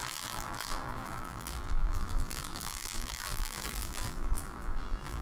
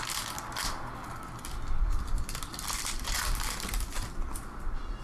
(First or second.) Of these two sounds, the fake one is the first